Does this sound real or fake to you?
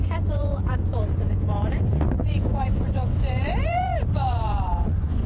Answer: fake